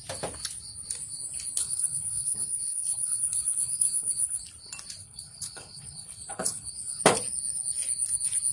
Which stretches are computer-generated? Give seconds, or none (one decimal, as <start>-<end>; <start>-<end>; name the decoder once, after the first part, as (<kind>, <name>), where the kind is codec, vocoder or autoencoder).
1.6-4.4 (codec, HILCodec); 5.0-7.0